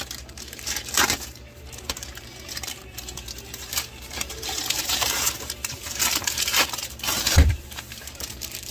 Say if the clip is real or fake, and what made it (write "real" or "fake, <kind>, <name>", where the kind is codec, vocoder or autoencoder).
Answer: fake, vocoder, BigVGAN v2